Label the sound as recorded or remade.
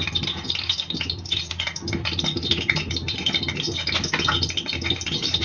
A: recorded